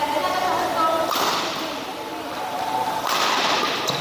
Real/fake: real